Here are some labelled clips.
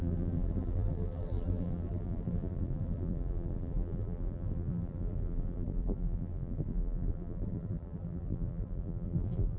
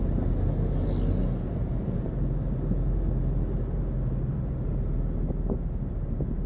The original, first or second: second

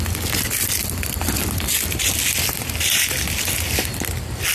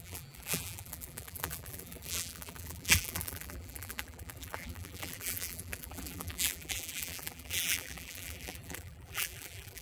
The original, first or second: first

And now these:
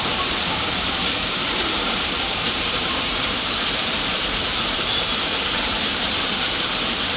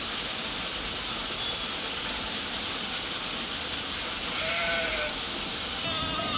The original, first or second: second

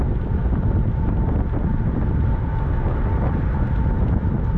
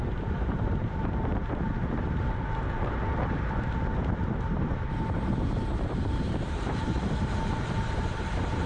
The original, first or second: first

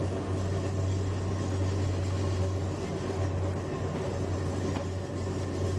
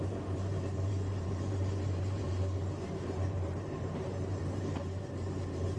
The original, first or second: first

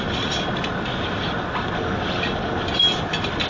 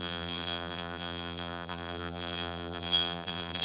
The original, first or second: first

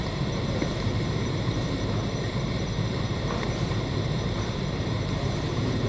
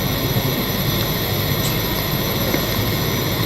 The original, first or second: second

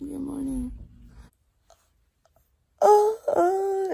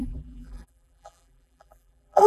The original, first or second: first